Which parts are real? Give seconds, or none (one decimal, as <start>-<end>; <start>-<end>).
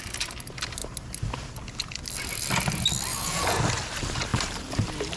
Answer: 0.0-3.1; 3.6-5.2